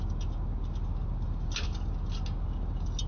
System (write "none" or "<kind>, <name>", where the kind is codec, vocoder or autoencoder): none